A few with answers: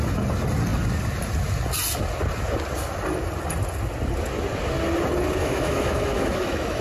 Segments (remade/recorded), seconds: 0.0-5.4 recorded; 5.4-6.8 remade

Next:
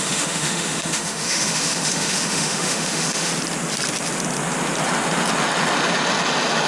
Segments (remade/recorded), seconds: 0.0-3.3 remade; 3.3-6.7 recorded

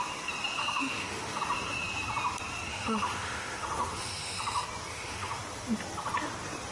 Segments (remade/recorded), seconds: 0.0-0.6 recorded; 0.6-1.4 remade; 1.4-2.7 recorded; 2.7-4.4 remade; 4.4-4.9 recorded; 4.9-5.4 remade; 5.4-6.7 recorded